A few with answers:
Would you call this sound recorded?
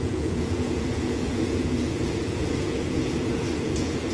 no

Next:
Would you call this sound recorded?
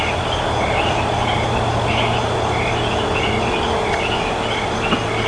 yes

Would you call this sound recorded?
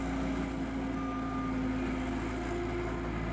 yes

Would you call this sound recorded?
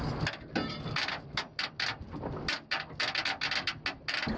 yes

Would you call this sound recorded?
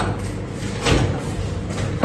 yes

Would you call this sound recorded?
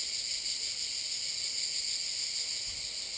yes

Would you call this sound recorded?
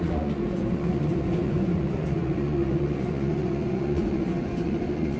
no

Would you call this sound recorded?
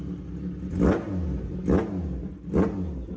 yes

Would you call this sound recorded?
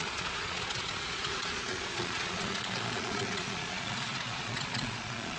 no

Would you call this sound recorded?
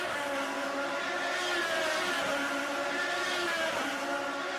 yes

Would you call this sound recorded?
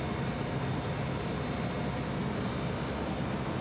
yes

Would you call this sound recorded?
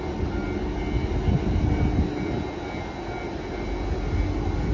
yes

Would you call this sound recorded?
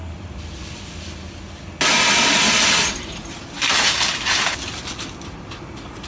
yes